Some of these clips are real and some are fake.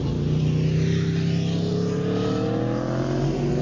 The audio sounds real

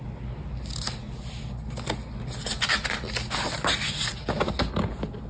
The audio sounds real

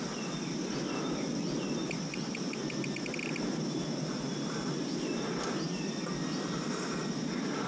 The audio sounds real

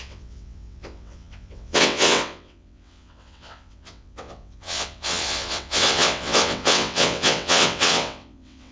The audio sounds fake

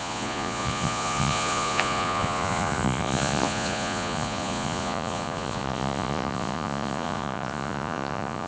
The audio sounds fake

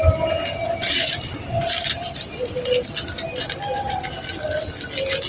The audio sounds real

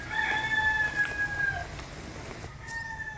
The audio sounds real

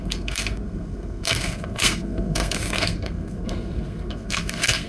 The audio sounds fake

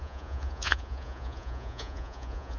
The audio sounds fake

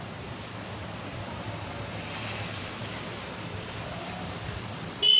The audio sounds real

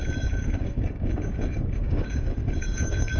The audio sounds fake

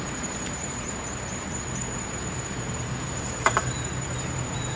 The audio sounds fake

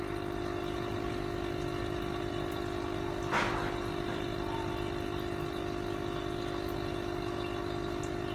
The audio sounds real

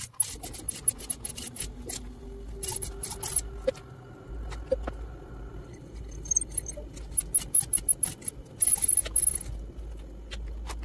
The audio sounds real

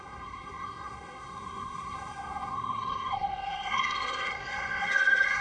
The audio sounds fake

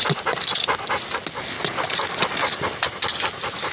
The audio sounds real